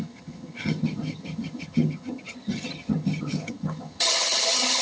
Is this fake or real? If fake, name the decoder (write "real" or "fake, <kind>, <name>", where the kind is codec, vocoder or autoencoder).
fake, vocoder, HiFi-GAN